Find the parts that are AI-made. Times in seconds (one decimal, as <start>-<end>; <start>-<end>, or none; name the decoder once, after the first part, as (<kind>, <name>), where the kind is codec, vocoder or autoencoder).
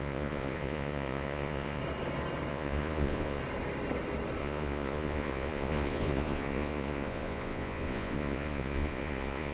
0.0-1.8 (vocoder, Vocos); 2.5-3.4; 4.4-9.5